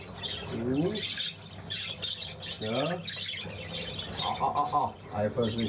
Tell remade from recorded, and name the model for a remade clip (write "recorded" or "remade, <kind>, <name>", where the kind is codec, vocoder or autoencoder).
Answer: recorded